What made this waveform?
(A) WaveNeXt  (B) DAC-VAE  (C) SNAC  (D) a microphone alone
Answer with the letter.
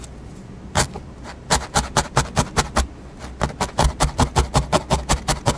D